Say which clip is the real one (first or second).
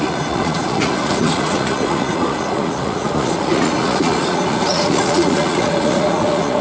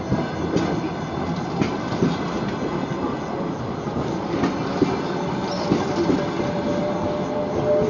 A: second